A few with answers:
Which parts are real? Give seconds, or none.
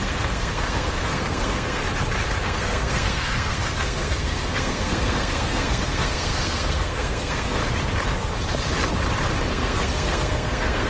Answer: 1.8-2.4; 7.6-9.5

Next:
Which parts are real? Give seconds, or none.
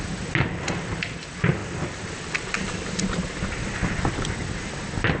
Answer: 0.0-5.2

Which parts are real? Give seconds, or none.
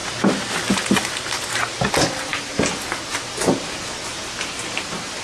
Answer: 0.0-5.2